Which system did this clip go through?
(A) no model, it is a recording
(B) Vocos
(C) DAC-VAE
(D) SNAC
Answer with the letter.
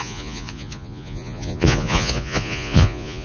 B